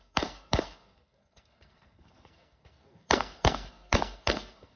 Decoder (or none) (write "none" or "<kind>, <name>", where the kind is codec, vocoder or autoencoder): codec, SNAC